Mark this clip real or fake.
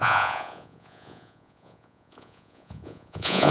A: fake